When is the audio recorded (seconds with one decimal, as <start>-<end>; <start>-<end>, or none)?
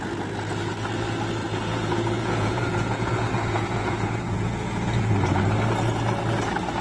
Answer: 0.0-1.4; 5.1-6.8